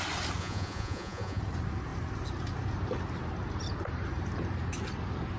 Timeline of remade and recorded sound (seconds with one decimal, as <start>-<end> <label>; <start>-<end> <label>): 0.0-0.4 recorded; 0.4-1.4 remade; 1.4-5.4 recorded